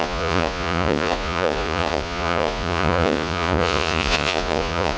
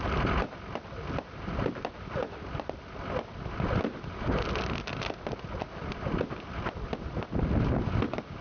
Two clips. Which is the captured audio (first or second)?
second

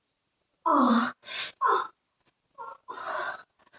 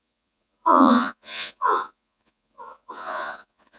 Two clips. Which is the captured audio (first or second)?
first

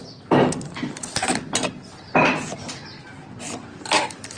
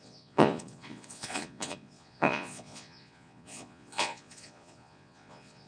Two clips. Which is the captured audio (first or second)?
first